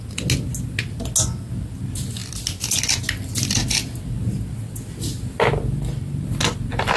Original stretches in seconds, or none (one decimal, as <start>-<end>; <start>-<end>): 0.0-7.0